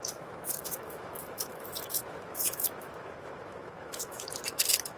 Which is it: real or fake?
fake